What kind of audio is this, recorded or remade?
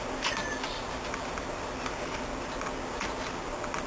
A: recorded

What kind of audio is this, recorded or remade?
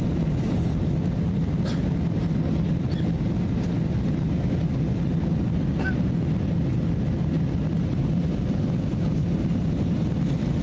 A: recorded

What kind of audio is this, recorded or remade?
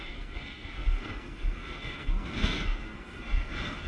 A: remade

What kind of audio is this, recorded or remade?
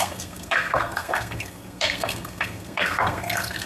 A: remade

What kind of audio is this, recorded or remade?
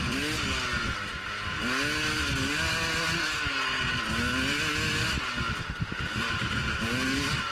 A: recorded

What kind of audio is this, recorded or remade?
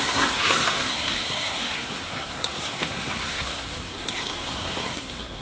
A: remade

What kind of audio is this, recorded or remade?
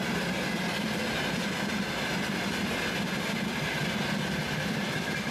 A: recorded